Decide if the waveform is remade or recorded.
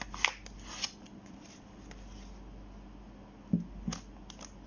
recorded